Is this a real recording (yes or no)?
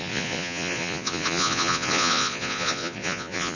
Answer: no